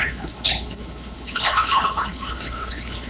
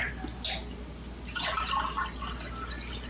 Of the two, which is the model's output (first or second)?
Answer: first